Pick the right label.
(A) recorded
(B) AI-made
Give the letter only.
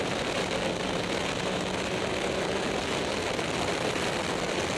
A